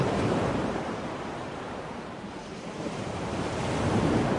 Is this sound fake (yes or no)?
yes